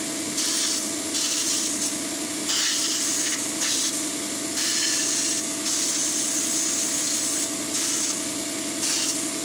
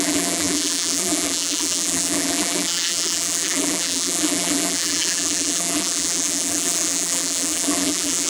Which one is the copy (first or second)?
second